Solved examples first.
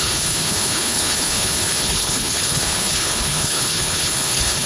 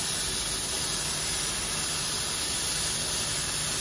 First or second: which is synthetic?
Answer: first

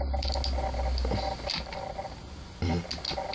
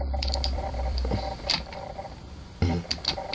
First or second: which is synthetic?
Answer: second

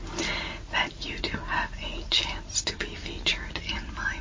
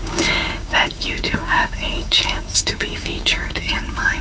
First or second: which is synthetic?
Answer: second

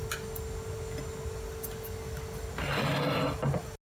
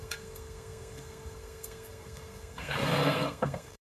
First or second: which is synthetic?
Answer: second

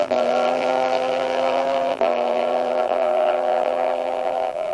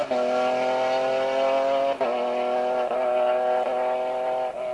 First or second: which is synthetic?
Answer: first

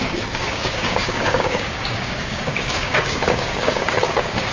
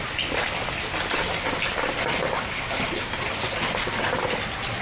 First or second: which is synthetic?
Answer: first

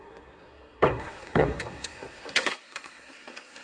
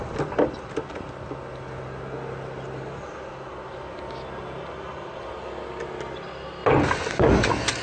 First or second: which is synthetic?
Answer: first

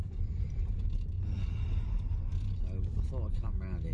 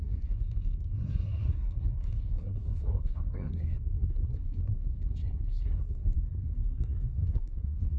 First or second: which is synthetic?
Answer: second